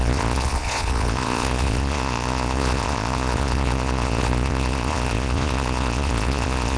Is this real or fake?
fake